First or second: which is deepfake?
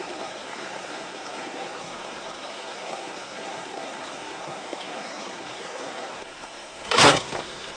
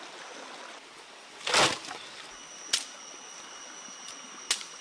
first